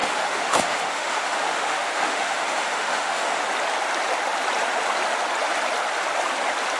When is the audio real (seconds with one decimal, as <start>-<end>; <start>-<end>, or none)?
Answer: 3.4-6.8